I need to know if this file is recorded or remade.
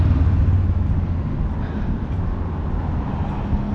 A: recorded